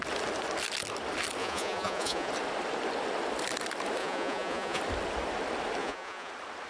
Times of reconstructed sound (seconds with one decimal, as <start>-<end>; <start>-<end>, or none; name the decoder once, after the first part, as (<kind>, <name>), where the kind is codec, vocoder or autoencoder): 1.4-2.3 (vocoder, Vocos); 4.0-4.8; 5.8-6.3